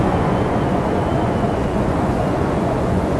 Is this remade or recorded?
remade